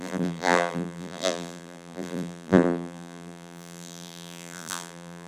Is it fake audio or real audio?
fake